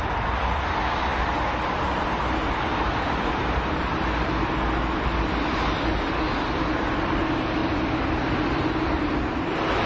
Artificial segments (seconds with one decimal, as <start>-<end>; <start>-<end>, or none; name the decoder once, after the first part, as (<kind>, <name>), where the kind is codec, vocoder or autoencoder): none